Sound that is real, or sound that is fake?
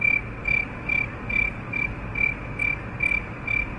real